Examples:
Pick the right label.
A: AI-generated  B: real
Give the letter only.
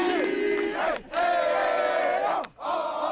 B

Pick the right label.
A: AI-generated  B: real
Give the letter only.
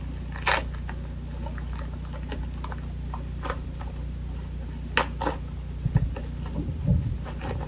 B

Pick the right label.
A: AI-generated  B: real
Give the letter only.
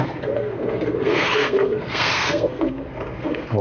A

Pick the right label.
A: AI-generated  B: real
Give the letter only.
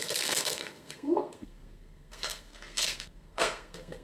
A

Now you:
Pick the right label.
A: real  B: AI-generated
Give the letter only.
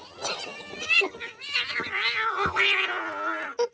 A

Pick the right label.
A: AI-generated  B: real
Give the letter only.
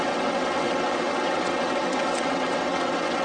A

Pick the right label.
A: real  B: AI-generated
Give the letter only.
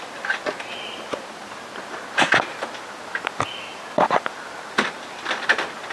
A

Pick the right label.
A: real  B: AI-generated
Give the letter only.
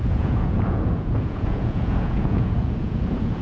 B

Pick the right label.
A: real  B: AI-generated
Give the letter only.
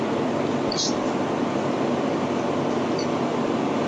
B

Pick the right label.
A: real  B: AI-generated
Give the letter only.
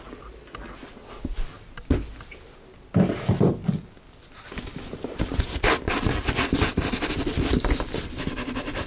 A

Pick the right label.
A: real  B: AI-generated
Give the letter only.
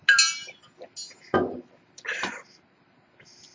A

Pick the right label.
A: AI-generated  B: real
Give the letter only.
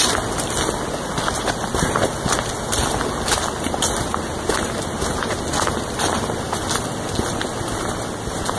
B